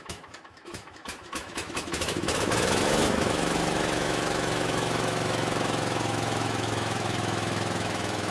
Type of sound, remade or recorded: remade